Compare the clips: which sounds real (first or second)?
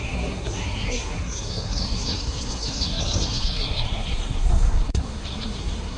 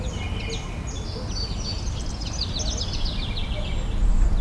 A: second